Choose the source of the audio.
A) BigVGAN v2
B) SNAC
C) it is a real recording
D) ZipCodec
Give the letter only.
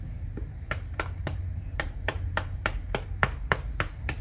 A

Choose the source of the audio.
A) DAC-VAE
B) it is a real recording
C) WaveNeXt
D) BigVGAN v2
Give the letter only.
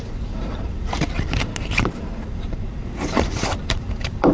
D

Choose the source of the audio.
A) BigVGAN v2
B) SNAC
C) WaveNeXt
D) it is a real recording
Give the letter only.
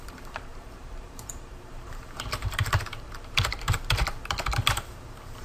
A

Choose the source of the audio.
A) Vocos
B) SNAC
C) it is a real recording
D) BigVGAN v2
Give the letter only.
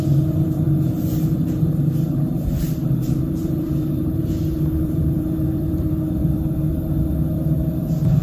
D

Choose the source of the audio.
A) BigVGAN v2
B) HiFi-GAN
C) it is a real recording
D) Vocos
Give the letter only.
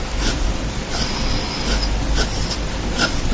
A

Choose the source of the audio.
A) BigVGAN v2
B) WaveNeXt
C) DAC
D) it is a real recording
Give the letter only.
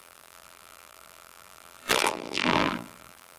A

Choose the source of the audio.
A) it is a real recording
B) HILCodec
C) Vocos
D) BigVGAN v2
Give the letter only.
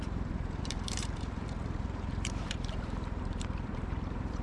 D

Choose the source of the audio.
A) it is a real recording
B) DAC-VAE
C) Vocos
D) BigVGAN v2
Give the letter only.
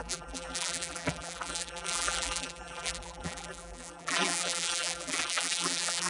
D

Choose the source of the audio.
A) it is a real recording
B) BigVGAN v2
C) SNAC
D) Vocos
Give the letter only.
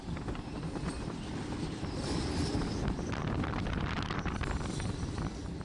B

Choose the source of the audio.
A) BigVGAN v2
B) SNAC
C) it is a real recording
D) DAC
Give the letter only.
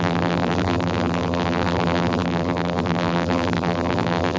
A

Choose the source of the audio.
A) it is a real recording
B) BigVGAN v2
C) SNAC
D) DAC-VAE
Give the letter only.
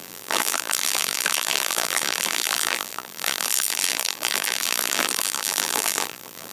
B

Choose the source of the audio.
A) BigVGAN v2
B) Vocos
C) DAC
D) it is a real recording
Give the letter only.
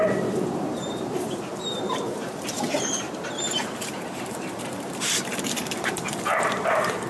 A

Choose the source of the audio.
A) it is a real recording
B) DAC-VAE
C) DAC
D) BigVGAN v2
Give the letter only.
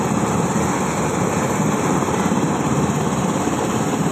D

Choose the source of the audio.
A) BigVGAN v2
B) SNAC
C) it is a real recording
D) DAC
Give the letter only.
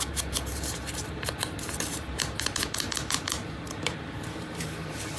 A